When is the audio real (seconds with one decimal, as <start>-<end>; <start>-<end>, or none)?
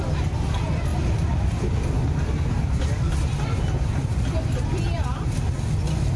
0.0-6.2